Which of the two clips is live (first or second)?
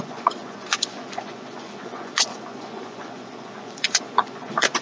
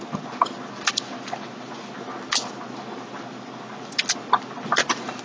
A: second